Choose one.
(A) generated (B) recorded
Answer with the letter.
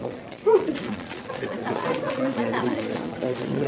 A